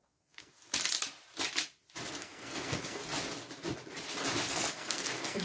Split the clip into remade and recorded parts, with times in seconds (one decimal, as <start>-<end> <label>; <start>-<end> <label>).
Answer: 0.0-0.6 remade; 0.6-2.1 recorded; 2.1-3.0 remade; 3.0-4.5 recorded; 4.5-5.4 remade